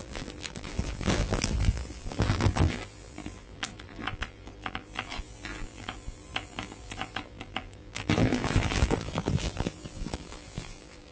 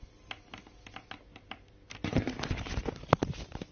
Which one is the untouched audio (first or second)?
second